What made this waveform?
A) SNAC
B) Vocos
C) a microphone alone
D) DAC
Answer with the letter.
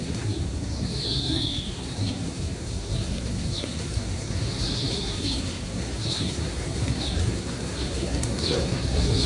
A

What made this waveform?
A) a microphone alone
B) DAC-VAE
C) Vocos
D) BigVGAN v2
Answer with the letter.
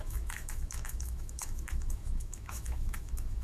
B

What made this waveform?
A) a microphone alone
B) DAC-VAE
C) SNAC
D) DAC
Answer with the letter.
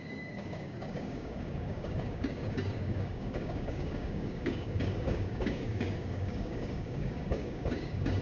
D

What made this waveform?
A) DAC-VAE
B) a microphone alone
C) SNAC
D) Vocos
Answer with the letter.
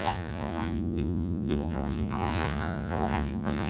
D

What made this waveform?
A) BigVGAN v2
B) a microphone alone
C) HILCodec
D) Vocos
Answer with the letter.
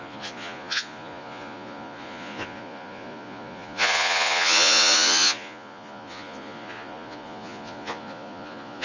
D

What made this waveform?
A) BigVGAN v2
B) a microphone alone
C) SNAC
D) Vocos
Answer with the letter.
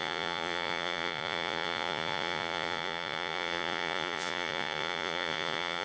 D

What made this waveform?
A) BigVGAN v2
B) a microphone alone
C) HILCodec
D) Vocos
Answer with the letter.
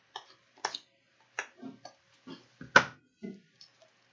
B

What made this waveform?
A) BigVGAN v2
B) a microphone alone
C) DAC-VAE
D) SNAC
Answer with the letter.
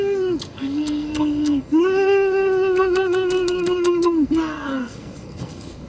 D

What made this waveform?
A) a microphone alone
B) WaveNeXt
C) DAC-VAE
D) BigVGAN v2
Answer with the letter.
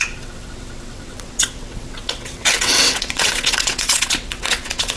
B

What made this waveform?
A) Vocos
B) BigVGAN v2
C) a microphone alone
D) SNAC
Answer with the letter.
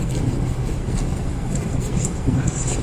D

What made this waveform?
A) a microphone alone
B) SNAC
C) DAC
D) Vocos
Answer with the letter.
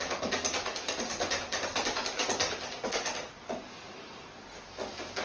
A